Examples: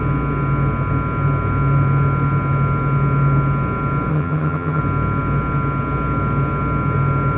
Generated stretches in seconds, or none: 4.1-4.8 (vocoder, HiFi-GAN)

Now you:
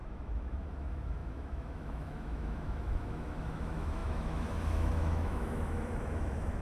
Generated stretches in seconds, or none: 0.0-6.6 (autoencoder, DAC-VAE)

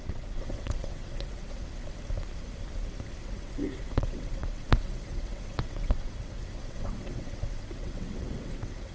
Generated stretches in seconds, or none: 0.0-1.8 (vocoder, WaveNeXt); 3.2-8.9

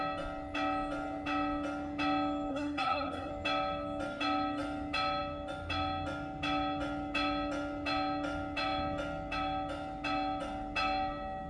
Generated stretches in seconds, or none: 2.5-3.3 (codec, SNAC)

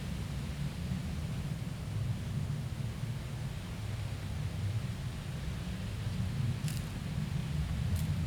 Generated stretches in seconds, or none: 7.4-8.3 (vocoder, BigVGAN v2)

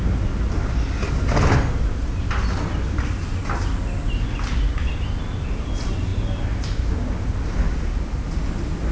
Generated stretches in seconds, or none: none

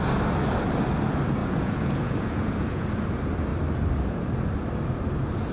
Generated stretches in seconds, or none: 1.4-3.1 (vocoder, Vocos)